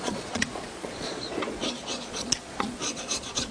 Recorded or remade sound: remade